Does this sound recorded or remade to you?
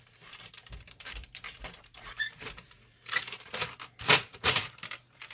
remade